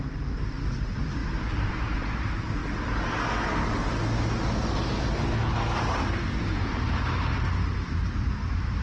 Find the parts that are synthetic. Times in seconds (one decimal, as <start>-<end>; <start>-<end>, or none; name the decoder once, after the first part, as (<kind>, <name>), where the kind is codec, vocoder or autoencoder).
0.0-1.2 (vocoder, BigVGAN v2); 1.7-2.6; 6.1-8.8